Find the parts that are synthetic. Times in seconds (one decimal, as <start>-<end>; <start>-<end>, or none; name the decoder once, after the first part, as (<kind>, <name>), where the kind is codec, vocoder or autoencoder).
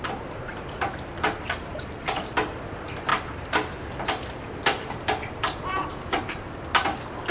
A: none